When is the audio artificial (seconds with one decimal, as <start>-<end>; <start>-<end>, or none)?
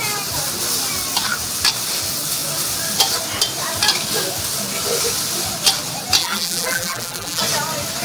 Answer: 6.2-7.4